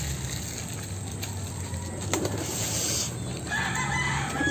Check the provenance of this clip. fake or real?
real